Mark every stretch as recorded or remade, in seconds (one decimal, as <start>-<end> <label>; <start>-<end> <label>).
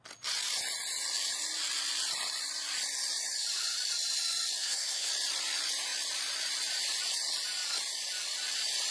0.0-4.6 recorded; 4.6-5.1 remade; 5.1-8.9 recorded